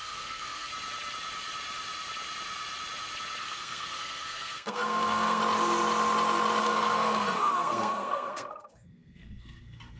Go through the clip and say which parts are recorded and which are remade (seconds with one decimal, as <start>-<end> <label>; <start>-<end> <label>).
0.0-0.7 remade; 0.7-3.4 recorded; 3.4-5.4 remade; 5.4-6.6 recorded; 6.6-10.0 remade